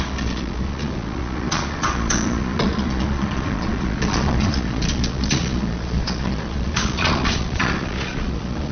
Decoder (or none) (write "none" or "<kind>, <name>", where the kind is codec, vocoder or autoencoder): vocoder, Vocos